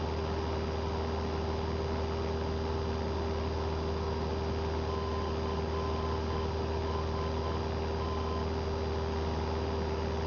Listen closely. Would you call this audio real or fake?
real